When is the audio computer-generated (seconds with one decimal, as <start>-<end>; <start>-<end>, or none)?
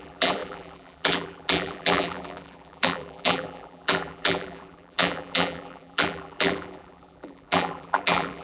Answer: 0.0-8.4